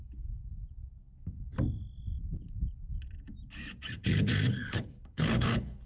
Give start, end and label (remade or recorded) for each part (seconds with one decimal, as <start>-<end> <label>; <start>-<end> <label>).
0.0-0.4 remade; 0.4-3.9 recorded; 3.9-5.9 remade